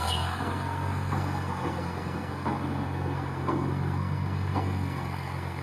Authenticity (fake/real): fake